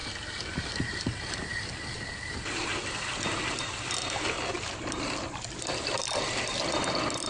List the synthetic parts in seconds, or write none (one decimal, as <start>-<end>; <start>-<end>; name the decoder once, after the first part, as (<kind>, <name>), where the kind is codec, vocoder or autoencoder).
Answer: none